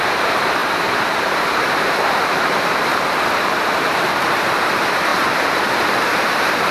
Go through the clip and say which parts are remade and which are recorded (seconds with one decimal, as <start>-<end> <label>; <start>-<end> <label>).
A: 0.0-2.9 remade; 2.9-3.4 recorded; 3.4-6.7 remade